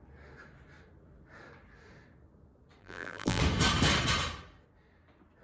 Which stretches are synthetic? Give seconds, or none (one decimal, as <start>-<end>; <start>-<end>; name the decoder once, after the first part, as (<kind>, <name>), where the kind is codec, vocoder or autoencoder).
2.8-3.4 (vocoder, BigVGAN v2)